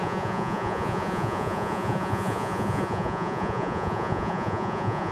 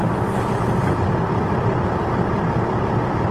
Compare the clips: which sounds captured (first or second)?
second